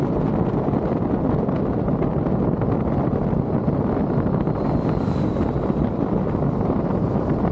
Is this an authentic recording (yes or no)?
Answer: yes